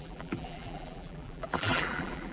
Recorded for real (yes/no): no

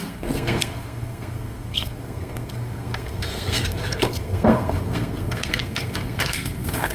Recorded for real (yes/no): no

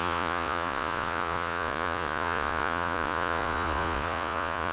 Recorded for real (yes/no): no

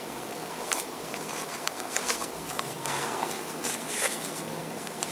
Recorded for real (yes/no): no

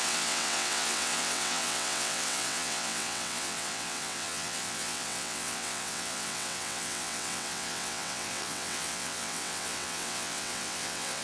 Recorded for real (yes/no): no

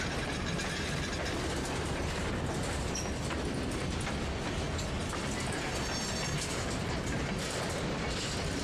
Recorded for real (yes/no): yes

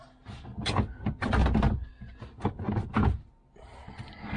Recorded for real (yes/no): yes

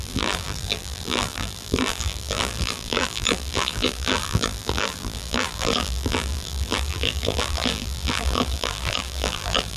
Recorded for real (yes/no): no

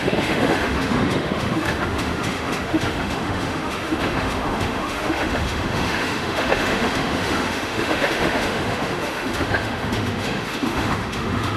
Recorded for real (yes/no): no